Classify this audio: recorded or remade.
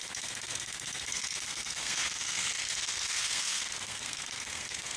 remade